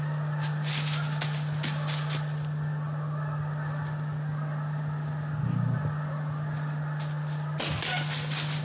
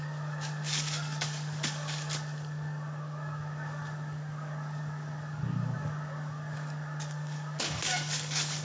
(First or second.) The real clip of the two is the first